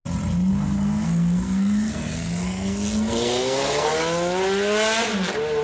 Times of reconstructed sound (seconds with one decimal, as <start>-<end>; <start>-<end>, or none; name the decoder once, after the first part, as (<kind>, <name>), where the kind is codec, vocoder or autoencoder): 0.5-3.9 (codec, SNAC)

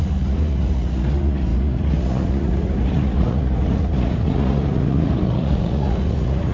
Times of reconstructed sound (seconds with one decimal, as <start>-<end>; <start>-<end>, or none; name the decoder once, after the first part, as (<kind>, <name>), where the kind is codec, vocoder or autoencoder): 0.0-6.5 (vocoder, Vocos)